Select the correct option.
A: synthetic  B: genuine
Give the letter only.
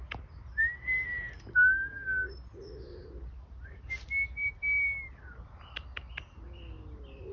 B